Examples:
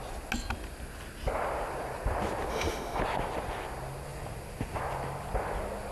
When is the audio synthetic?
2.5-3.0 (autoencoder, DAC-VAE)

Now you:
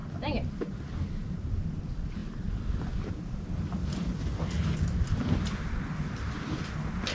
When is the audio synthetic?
none

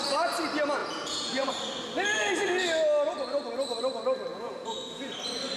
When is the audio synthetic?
0.8-1.5 (vocoder, Vocos); 4.3-5.0

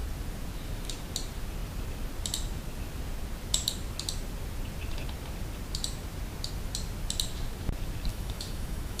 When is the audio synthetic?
8.1-9.0 (autoencoder, DAC-VAE)

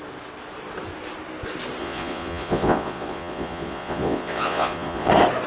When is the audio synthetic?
1.8-5.1 (vocoder, Vocos)

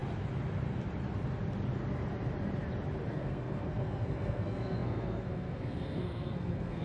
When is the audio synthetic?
3.1-6.8 (codec, SNAC)